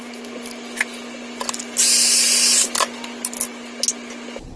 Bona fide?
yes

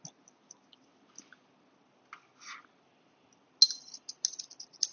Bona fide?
yes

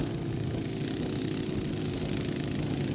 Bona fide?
yes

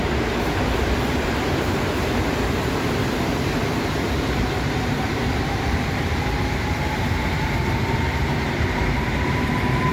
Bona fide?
no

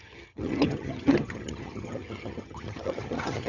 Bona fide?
no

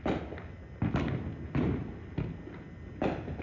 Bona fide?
yes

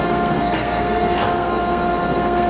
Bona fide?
no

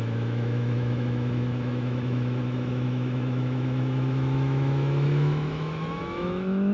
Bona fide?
no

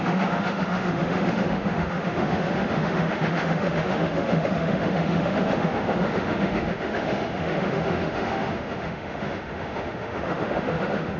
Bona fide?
no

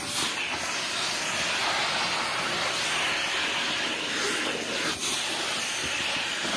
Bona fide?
yes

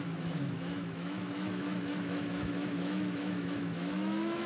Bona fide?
no